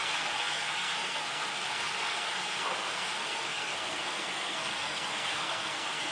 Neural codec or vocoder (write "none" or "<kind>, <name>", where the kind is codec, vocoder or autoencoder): codec, SNAC